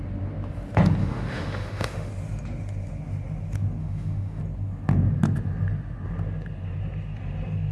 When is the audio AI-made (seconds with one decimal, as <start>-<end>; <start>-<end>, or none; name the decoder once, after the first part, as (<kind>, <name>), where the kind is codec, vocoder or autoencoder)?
1.0-2.1 (autoencoder, DAC-VAE); 3.8-4.4